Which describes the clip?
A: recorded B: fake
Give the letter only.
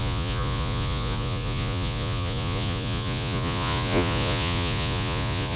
B